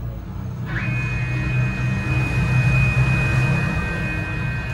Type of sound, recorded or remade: recorded